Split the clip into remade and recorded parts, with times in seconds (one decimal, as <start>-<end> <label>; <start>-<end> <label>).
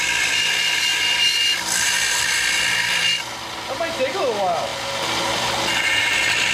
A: 0.0-6.5 recorded